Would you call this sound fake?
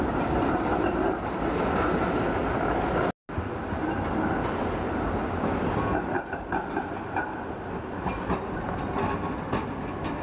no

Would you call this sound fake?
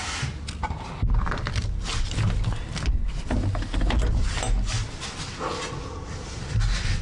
no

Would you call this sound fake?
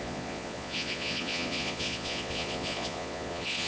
yes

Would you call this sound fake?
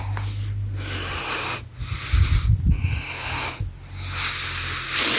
no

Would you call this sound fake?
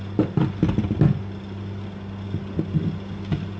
no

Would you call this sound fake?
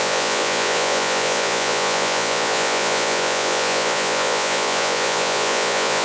yes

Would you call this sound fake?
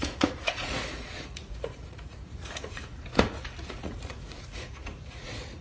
yes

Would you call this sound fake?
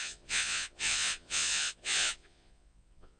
yes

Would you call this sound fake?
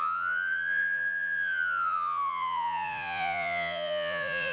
yes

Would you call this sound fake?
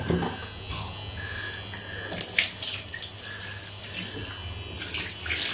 no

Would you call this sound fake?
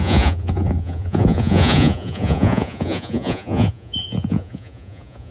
yes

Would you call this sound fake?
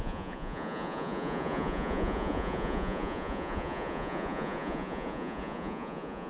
yes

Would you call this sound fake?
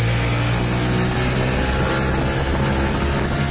no